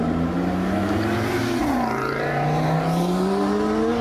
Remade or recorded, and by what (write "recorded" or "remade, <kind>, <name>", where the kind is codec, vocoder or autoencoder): recorded